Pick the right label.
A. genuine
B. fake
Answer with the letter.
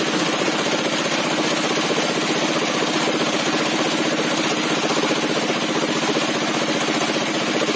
A